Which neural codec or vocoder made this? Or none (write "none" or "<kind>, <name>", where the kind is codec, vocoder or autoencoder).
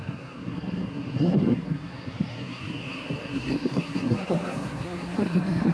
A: codec, SNAC